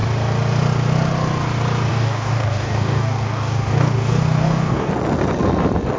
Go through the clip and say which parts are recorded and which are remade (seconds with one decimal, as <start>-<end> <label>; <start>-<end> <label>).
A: 0.0-1.9 recorded; 1.9-4.9 remade; 4.9-6.0 recorded